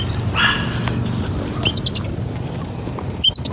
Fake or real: real